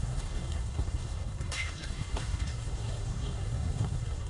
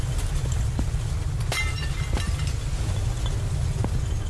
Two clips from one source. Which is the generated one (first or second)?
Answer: first